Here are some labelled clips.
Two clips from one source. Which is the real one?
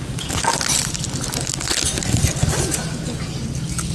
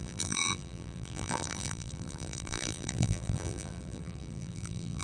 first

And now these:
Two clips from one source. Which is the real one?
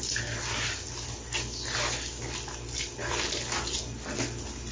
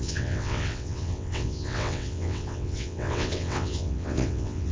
first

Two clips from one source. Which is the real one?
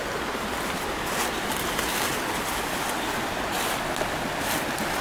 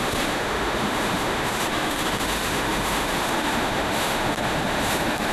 first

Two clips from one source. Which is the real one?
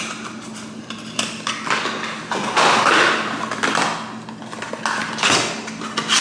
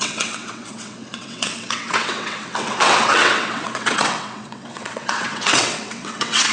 first